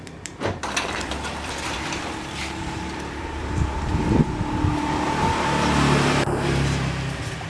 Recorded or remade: remade